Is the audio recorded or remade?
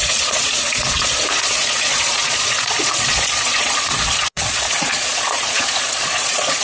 remade